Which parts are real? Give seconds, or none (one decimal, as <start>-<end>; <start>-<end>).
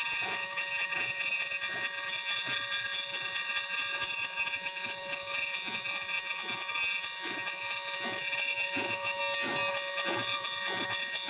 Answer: 9.2-9.7